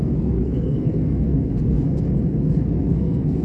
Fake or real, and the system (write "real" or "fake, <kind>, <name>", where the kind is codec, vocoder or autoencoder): fake, codec, SNAC